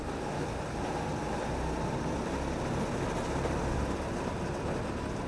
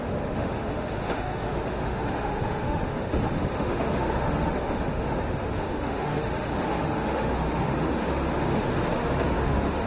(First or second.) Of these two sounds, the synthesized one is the second